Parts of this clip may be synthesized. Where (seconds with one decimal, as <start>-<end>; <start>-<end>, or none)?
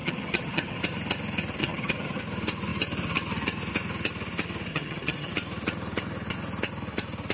0.0-0.8; 1.6-2.2; 4.7-5.3